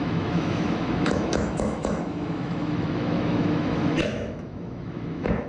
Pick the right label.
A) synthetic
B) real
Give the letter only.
A